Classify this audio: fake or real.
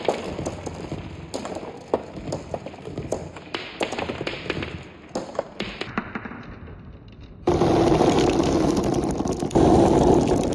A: real